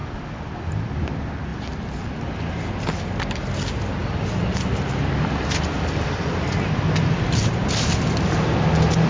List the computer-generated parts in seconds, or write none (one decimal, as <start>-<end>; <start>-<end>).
4.0-6.7